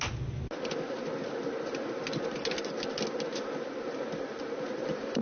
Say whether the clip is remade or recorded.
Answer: recorded